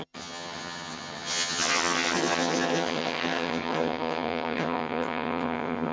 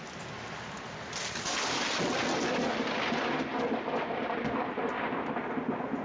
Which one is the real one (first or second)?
second